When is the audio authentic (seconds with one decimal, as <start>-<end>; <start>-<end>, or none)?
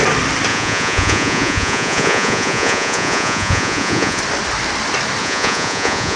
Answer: 0.0-0.5; 4.2-5.2